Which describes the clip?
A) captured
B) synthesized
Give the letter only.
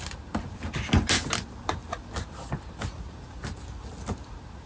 A